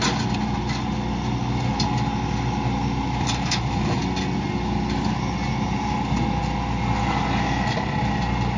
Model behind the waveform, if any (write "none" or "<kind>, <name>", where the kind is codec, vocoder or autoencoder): none